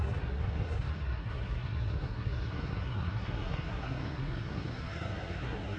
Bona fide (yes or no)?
no